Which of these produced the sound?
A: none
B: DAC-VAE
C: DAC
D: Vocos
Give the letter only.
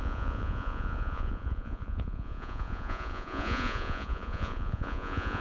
D